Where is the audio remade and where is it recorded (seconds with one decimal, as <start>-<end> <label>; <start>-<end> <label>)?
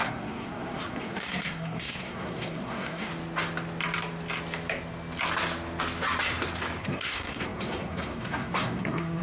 0.0-3.1 remade; 3.1-6.8 recorded; 6.8-9.2 remade